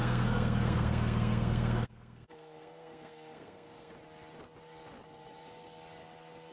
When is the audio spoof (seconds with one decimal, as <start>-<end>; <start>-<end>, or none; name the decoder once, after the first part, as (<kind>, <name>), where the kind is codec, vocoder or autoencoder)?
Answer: 0.0-3.9 (codec, SNAC)